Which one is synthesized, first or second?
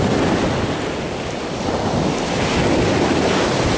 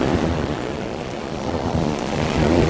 second